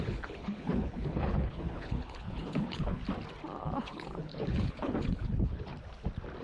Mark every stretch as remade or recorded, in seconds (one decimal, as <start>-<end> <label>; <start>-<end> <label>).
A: 0.0-3.0 remade; 3.0-3.6 recorded; 3.6-5.7 remade; 5.7-6.4 recorded